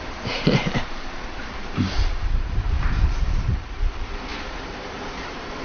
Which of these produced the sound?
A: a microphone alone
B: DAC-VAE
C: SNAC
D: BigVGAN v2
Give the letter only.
D